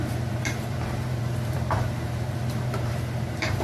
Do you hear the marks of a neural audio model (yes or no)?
yes